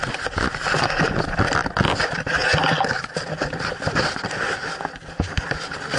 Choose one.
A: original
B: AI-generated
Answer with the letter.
A